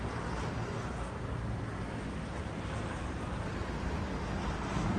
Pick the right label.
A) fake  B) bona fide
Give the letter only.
B